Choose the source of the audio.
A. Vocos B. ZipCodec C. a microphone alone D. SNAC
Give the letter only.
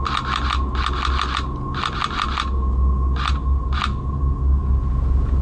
C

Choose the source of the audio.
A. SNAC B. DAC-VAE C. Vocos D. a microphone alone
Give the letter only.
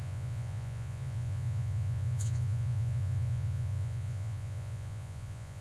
C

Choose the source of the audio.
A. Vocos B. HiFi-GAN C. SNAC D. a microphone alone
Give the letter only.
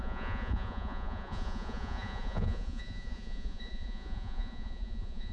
A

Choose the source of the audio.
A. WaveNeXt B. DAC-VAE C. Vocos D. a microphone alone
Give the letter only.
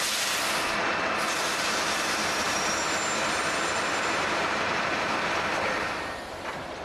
D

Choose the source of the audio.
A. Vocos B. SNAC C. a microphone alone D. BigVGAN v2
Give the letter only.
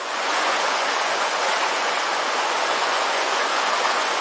A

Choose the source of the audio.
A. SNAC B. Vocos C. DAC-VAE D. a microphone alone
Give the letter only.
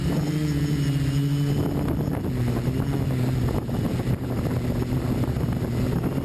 D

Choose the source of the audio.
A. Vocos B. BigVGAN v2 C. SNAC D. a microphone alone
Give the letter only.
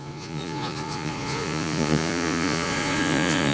A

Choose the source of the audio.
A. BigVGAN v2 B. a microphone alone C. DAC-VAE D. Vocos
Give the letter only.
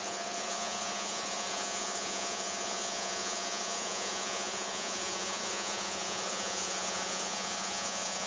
D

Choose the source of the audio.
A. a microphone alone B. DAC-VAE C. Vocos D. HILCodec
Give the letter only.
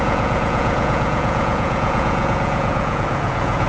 C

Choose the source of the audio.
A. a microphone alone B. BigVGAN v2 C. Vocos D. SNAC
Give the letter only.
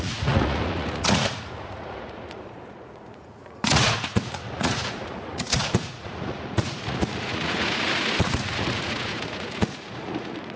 C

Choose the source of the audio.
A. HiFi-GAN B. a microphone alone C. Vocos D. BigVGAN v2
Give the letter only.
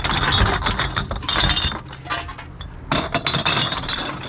B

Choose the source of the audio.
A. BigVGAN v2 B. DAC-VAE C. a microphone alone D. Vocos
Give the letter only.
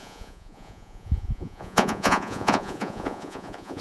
D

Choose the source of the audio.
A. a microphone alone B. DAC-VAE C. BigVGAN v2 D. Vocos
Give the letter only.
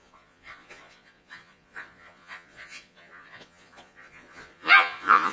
D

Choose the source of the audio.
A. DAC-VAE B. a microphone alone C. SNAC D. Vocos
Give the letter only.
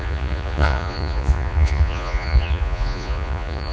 D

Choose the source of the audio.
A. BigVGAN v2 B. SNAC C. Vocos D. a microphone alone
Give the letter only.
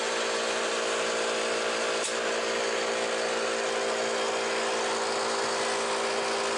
D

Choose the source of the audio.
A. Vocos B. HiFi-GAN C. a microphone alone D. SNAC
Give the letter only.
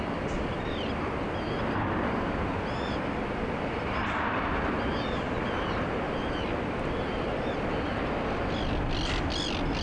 C